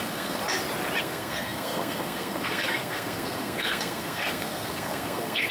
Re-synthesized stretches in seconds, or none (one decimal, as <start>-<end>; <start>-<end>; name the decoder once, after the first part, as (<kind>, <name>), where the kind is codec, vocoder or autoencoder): 0.0-0.4 (codec, SNAC); 1.0-5.5